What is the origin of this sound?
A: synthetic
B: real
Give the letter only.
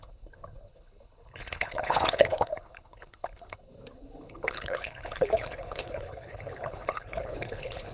A